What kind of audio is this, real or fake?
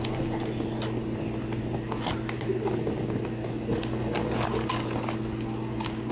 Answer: real